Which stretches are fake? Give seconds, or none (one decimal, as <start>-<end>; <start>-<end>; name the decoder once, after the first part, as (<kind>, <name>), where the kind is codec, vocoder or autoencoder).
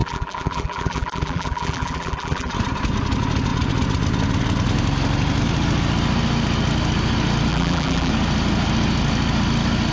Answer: 0.0-2.5 (vocoder, BigVGAN v2); 7.5-8.1